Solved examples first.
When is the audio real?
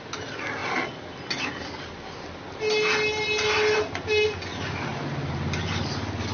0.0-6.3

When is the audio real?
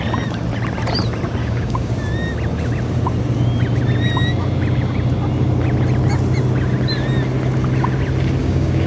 0.0-1.4; 1.9-8.4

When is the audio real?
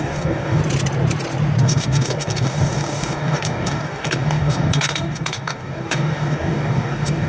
0.6-1.6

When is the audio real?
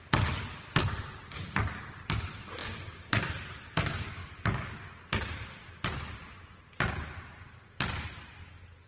0.0-4.2; 4.7-8.9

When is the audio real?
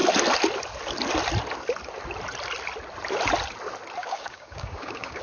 0.0-4.0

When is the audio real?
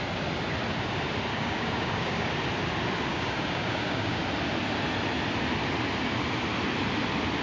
0.0-1.3; 2.3-3.1; 4.2-7.4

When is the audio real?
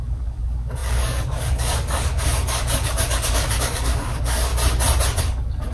4.5-5.2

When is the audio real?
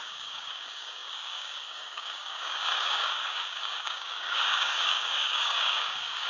none